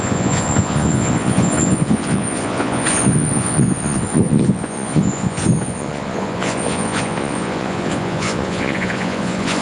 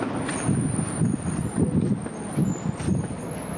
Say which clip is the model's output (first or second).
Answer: first